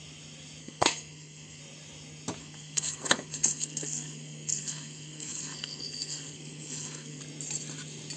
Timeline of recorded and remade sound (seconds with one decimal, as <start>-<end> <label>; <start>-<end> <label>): 0.0-0.6 recorded; 0.6-1.6 remade; 1.6-2.4 recorded; 2.4-7.2 remade; 7.2-8.2 recorded